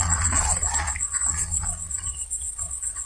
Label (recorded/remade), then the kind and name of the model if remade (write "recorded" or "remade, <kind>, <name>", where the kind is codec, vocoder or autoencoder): remade, vocoder, Vocos